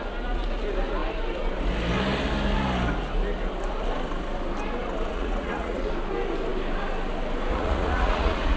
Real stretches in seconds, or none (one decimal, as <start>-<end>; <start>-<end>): 0.0-5.1; 5.9-7.5